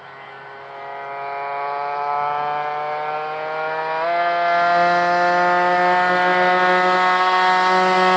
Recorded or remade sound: recorded